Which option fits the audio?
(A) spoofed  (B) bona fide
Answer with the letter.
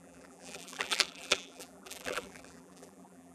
A